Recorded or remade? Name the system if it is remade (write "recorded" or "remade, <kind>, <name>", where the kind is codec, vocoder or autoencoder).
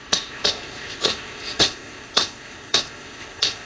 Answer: remade, codec, ZipCodec